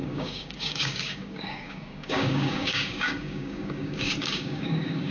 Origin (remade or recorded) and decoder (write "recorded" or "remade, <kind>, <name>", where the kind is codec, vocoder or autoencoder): remade, codec, DAC